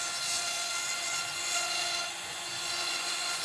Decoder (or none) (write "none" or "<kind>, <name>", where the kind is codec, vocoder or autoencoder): vocoder, Vocos